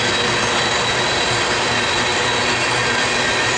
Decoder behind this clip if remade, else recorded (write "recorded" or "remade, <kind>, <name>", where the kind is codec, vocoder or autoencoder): recorded